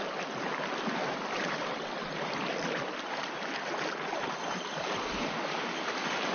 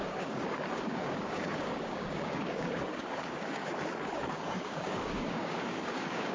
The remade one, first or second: second